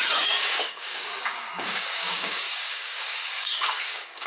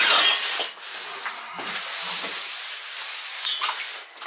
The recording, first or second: second